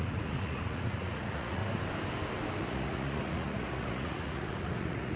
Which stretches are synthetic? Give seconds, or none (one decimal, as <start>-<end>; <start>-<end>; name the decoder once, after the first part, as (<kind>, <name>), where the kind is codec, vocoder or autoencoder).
0.0-1.6 (vocoder, Vocos); 2.6-5.2